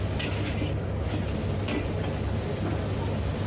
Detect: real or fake real